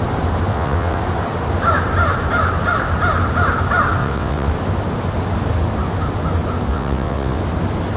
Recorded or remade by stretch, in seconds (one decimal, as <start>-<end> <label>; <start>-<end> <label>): 0.0-0.5 recorded; 0.5-1.0 remade; 1.0-4.0 recorded; 4.0-4.5 remade; 4.5-6.7 recorded; 6.7-7.4 remade; 7.4-8.0 recorded